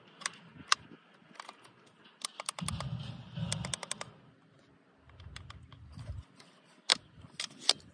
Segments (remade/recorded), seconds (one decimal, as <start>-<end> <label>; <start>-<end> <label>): 0.0-6.9 recorded; 6.9-7.4 remade; 7.4-7.9 recorded